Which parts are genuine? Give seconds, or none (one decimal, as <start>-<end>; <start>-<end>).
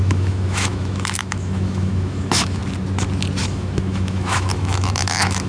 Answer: 2.6-3.4